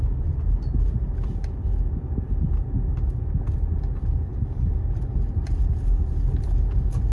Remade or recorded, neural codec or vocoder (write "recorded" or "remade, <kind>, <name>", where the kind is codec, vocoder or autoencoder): recorded